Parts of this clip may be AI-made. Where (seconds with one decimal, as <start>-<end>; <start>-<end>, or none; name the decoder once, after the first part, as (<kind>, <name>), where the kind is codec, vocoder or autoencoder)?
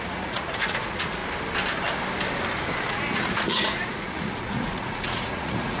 0.0-1.2 (vocoder, Vocos); 2.9-5.8